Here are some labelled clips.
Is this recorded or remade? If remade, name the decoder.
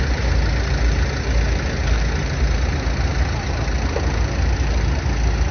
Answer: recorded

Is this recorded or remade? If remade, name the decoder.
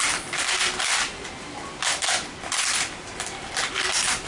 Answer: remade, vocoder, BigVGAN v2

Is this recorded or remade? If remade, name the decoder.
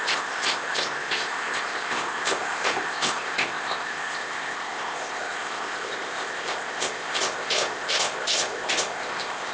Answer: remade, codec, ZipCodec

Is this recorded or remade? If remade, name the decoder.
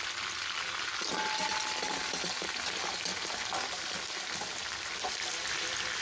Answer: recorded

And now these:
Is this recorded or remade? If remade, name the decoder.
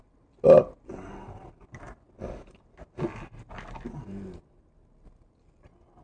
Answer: recorded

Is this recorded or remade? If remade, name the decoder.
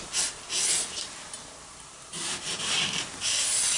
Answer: recorded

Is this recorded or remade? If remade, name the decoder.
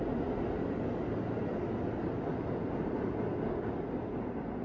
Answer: recorded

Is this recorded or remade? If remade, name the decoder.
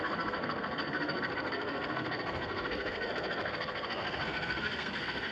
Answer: remade, codec, SNAC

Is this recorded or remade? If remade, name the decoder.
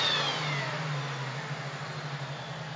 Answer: recorded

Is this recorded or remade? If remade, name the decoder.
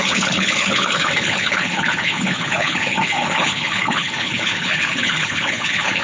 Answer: remade, codec, HILCodec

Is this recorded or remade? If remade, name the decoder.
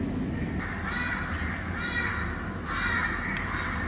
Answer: recorded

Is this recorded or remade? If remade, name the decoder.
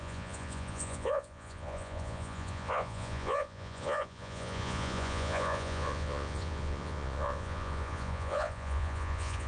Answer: remade, vocoder, Vocos